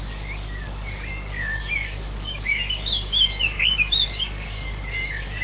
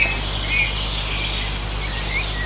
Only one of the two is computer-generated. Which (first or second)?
first